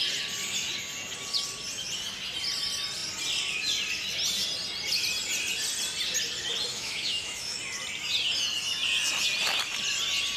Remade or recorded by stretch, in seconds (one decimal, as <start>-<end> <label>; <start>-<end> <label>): 0.0-6.7 recorded; 6.7-7.6 remade; 7.6-10.4 recorded